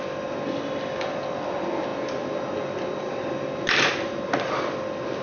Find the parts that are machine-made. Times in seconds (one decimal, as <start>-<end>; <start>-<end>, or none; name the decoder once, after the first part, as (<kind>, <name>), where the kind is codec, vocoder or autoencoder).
none